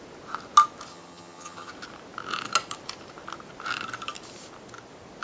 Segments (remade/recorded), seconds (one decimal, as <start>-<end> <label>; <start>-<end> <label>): 0.0-0.9 recorded; 0.9-1.7 remade; 1.7-5.2 recorded